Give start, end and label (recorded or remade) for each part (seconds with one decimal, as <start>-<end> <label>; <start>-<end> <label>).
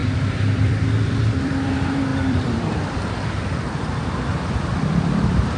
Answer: 0.0-5.6 remade